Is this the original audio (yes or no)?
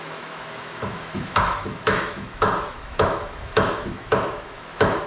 no